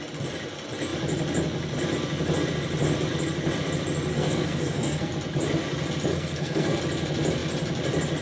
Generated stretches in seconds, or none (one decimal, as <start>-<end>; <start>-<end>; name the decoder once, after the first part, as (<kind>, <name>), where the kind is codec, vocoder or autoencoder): 4.1-5.1 (codec, SNAC); 6.1-6.8